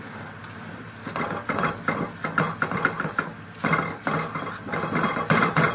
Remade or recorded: recorded